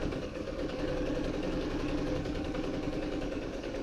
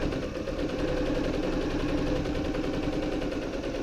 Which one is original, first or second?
second